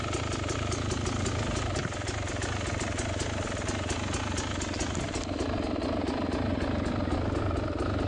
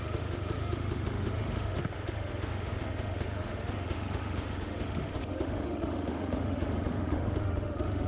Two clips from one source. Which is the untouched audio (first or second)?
first